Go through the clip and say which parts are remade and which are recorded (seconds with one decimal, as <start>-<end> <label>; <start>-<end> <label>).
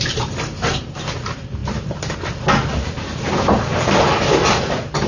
0.0-5.1 recorded